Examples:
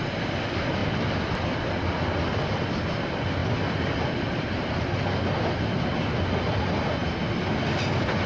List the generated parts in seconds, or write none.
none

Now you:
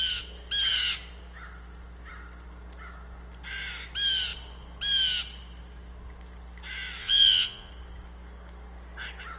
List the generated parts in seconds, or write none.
7.0-7.7 (vocoder, Vocos)

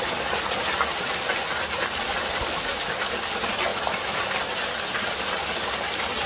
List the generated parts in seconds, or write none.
none

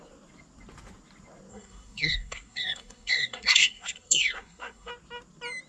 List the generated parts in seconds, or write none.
1.5-4.9 (codec, SNAC)

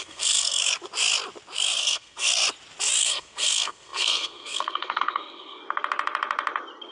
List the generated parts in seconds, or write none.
0.0-0.6 (codec, SNAC); 1.8-2.3; 3.0-5.6